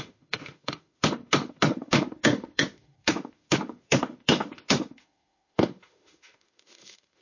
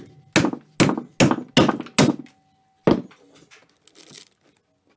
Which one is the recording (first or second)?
second